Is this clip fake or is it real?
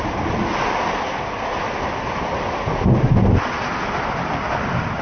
real